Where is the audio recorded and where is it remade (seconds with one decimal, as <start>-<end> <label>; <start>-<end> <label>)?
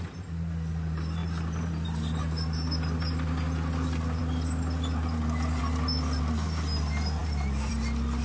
0.0-8.2 recorded